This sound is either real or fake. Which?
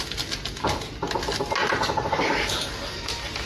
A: real